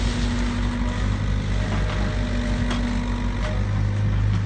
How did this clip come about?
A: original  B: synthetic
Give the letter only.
A